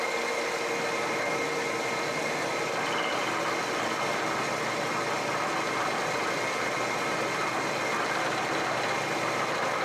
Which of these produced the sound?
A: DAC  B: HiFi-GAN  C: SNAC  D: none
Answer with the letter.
D